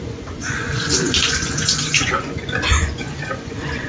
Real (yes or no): no